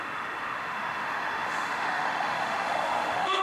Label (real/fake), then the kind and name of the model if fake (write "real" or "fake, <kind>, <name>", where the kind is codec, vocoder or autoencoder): fake, autoencoder, DAC-VAE